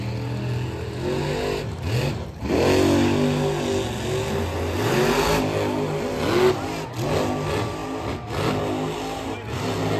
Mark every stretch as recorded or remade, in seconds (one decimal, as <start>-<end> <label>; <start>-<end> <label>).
0.0-10.0 recorded